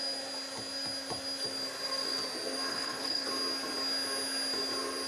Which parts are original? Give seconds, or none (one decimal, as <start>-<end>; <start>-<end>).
0.0-2.7; 3.3-5.1